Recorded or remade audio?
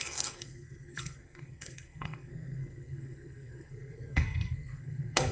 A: remade